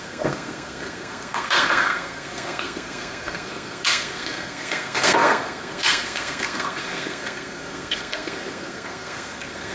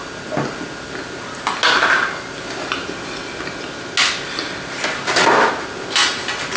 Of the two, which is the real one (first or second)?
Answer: second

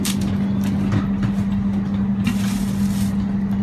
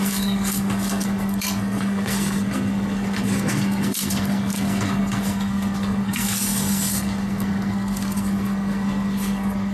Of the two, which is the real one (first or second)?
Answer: first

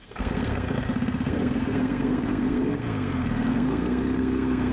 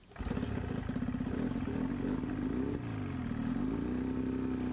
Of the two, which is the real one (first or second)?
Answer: second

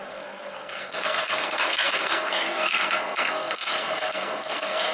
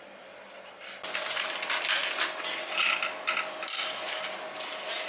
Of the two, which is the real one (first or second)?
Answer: second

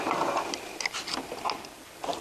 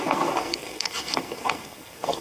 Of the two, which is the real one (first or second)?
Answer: first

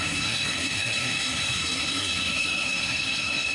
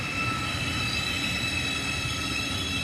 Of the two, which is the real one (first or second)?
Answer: second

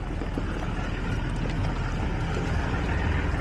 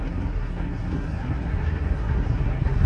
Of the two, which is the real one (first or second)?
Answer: first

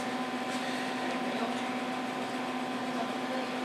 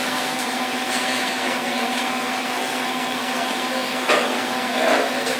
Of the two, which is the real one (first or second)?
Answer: first